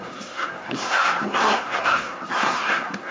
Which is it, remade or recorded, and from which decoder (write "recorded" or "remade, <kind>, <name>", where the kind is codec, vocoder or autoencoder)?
remade, codec, SNAC